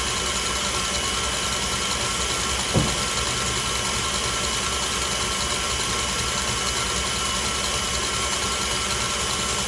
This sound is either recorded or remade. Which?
recorded